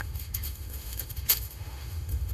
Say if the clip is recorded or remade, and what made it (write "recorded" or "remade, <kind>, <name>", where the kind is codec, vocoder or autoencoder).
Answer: remade, autoencoder, DAC-VAE